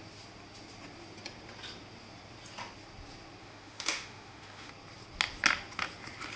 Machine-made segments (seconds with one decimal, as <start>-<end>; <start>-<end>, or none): 3.4-4.7